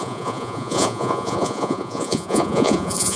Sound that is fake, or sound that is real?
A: fake